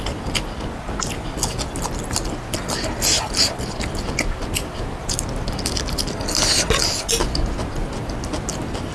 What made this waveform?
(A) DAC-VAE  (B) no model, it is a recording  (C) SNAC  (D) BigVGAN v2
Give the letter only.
B